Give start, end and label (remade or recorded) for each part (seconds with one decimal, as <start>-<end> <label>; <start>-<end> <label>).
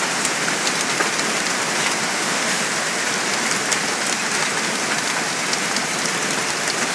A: 0.0-2.1 recorded; 2.1-2.6 remade; 2.6-6.9 recorded